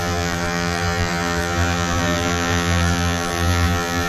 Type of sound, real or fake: fake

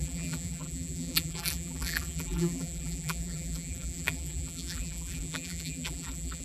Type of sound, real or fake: fake